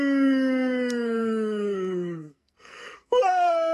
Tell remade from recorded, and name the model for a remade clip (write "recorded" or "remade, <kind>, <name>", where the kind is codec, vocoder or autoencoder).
remade, codec, SNAC